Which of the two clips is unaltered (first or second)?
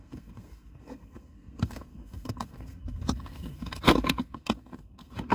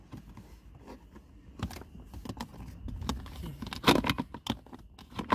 second